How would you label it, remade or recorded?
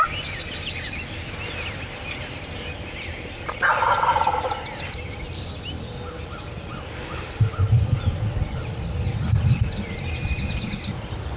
remade